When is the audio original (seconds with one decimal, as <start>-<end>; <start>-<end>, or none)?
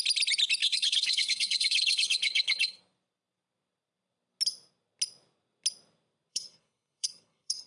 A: 0.0-0.6; 2.8-6.3